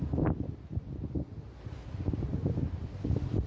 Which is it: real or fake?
real